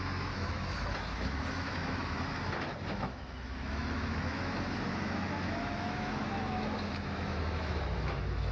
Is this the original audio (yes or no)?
no